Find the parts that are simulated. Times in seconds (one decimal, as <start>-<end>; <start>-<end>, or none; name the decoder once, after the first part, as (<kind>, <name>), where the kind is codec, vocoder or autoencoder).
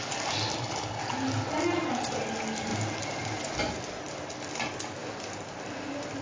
0.5-1.0 (codec, HILCodec)